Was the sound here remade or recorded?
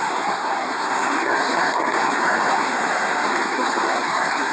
remade